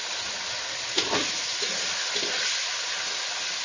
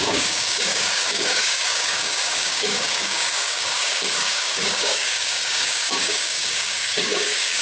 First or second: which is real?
first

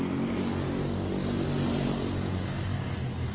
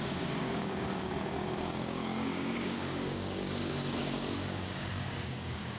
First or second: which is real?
first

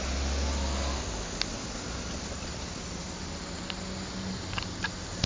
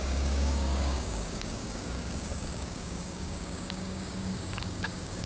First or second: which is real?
first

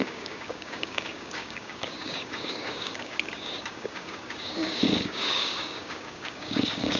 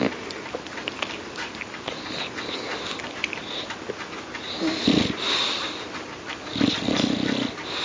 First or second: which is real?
second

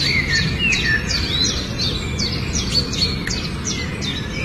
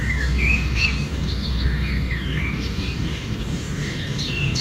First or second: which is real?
first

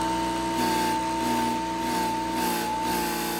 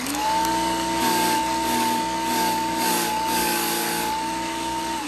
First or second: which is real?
first